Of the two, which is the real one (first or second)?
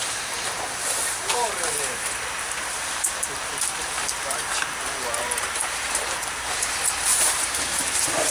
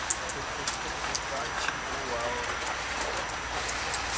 second